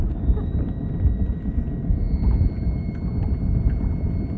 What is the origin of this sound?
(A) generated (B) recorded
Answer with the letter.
B